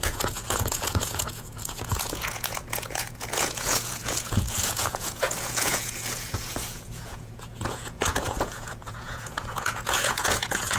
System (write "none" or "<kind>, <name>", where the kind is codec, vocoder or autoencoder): vocoder, Vocos